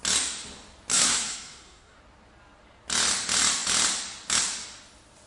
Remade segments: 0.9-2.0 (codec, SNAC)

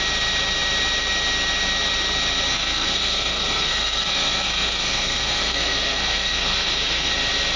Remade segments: 2.5-7.1 (codec, SNAC)

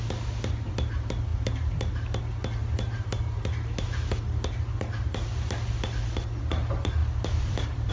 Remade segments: 7.0-7.9 (vocoder, BigVGAN v2)

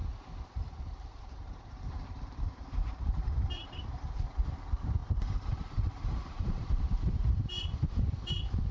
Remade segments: 0.9-8.7 (vocoder, BigVGAN v2)